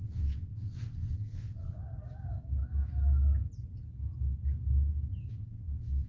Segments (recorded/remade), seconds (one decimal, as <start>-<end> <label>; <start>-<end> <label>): 0.0-1.9 remade; 1.9-5.3 recorded; 5.3-6.1 remade